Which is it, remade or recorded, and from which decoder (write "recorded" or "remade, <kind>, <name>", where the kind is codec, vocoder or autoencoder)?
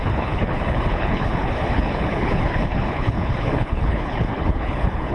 remade, codec, HILCodec